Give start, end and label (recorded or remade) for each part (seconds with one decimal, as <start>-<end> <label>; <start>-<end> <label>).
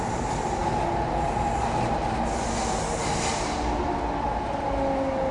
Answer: 0.0-5.3 recorded